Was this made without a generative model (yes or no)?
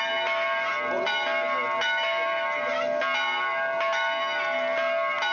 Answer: yes